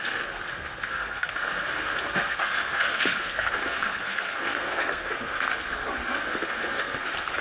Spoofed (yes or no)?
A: yes